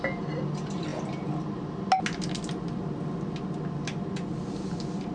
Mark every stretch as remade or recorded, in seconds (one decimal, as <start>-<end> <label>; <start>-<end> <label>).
0.0-5.1 recorded